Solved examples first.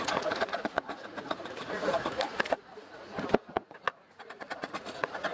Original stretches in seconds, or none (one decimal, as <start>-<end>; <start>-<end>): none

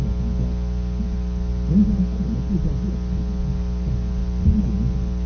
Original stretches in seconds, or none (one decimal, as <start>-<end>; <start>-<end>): 0.0-5.3

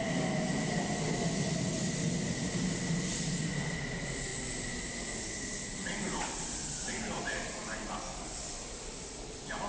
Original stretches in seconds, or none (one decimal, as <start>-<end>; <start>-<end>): 0.0-9.7

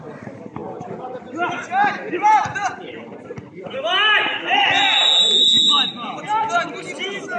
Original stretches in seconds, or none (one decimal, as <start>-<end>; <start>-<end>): 0.0-7.4

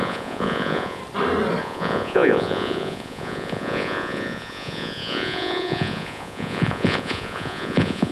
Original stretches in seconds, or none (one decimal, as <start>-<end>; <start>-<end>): 1.0-1.6

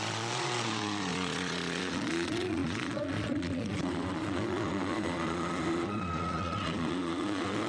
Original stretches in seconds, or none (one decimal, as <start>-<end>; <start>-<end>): none